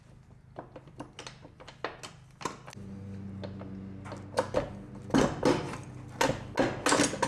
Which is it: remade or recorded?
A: recorded